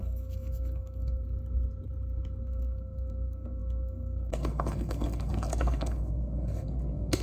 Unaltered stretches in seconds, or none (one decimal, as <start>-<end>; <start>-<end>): 1.2-2.4